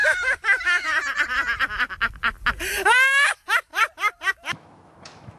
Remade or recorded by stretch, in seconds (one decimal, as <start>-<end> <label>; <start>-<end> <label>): 0.0-0.9 remade; 0.9-2.7 recorded; 2.7-3.7 remade; 3.7-4.3 recorded; 4.3-5.4 remade